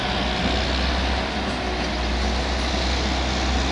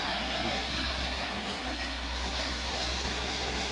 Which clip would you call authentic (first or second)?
first